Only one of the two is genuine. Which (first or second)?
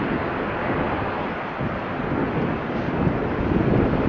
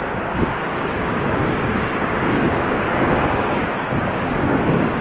first